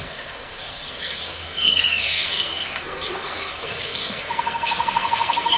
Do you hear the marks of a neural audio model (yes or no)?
yes